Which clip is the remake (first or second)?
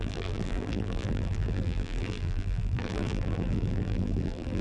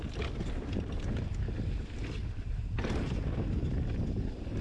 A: first